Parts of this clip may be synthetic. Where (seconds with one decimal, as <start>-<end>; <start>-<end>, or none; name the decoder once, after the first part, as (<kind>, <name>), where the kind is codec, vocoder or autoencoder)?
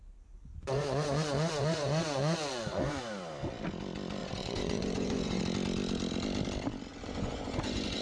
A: 0.5-3.0 (vocoder, Vocos); 4.2-5.4; 6.9-8.0